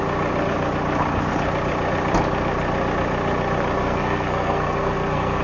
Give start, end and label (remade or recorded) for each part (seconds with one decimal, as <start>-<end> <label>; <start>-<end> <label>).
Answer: 0.0-3.8 recorded; 3.8-5.4 remade